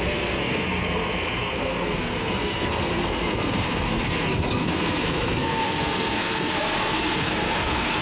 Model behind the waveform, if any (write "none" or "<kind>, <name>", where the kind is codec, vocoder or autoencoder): codec, SNAC